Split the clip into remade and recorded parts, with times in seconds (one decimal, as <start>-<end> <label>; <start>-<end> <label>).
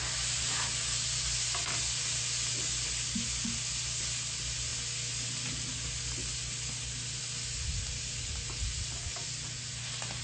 0.0-10.2 recorded